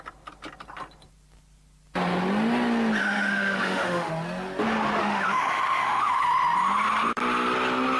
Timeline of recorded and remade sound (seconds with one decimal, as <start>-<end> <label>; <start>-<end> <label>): 0.0-3.0 recorded; 3.0-4.1 remade; 4.1-5.0 recorded; 5.0-6.2 remade; 6.2-8.0 recorded